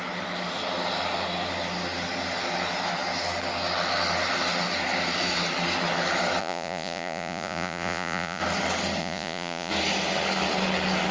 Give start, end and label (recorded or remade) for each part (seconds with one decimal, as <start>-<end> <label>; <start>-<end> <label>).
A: 0.0-6.4 recorded; 6.4-8.4 remade; 8.4-9.0 recorded; 9.0-9.7 remade; 9.7-11.1 recorded